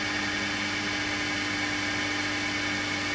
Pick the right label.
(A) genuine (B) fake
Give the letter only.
A